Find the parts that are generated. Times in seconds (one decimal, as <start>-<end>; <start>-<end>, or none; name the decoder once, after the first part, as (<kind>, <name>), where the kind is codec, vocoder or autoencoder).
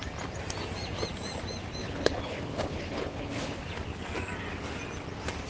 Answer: 1.8-3.6 (codec, HILCodec)